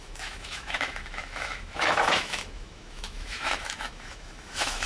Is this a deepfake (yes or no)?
yes